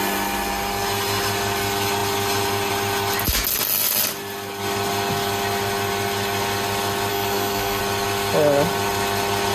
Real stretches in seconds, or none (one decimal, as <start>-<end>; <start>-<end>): 0.0-7.1; 7.8-9.5